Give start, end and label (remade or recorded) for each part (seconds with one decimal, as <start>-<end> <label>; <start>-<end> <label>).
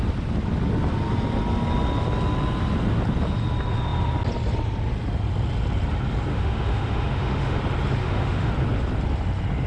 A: 0.0-6.3 recorded; 6.3-7.6 remade; 7.6-8.0 recorded; 8.0-8.5 remade; 8.5-9.7 recorded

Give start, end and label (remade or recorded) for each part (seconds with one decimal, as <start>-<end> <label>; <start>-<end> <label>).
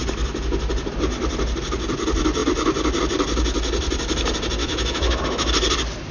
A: 0.0-4.6 recorded; 4.6-5.5 remade; 5.5-6.1 recorded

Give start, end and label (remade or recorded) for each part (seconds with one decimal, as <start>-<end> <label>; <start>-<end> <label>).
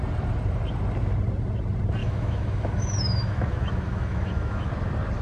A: 0.0-2.0 recorded; 2.0-4.7 remade; 4.7-5.2 recorded